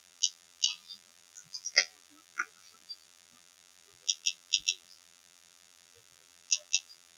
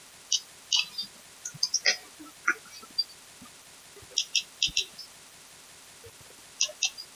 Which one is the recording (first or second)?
second